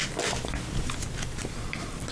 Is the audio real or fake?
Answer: real